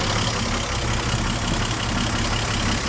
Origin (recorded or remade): recorded